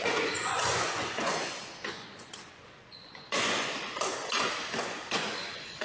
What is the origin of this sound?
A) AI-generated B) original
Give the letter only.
A